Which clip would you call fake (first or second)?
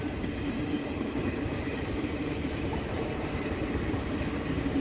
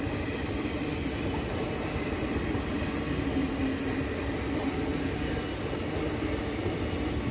first